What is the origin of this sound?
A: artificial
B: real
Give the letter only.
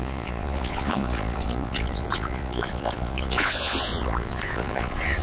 A